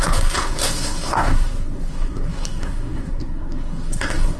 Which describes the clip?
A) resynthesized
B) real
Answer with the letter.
A